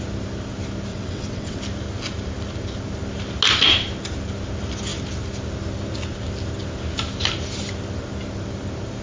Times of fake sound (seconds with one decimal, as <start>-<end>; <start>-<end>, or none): 0.9-1.6